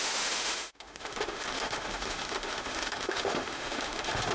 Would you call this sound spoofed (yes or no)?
yes